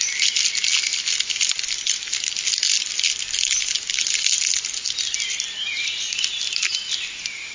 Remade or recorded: recorded